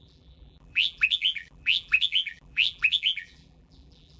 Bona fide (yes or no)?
no